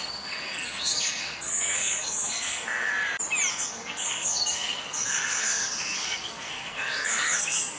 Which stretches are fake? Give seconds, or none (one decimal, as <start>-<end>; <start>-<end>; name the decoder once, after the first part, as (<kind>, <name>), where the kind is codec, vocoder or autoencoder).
0.0-2.9 (codec, SNAC); 3.5-7.8